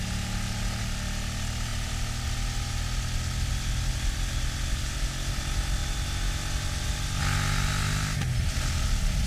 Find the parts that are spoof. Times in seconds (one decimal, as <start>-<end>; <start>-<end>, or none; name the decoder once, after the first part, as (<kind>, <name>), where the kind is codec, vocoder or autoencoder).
none